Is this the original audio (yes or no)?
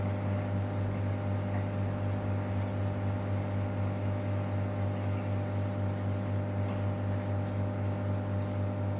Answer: yes